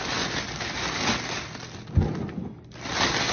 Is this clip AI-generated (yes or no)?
no